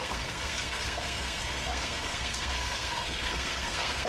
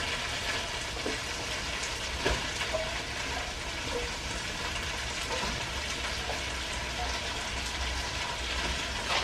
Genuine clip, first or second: second